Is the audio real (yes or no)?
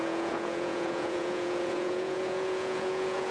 no